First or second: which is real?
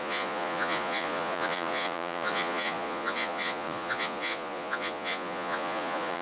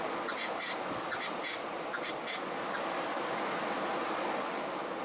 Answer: second